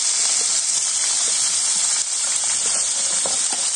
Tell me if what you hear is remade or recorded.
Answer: recorded